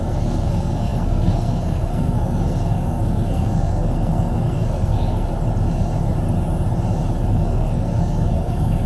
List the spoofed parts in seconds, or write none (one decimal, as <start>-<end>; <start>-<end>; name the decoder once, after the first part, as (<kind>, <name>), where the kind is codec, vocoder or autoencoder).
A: 0.0-5.3 (codec, SNAC); 7.3-8.9